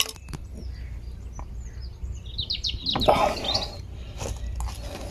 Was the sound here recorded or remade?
recorded